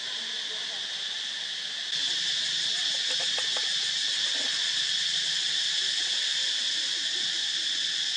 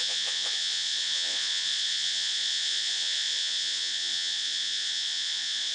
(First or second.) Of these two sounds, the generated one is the second